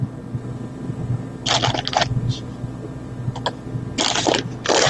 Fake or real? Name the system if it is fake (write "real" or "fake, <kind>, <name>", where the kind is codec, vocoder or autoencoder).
real